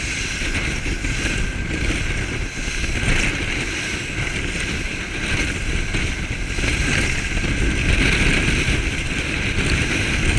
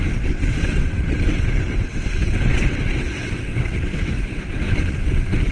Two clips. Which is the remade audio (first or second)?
second